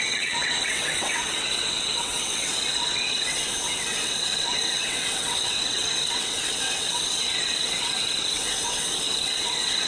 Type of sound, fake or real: fake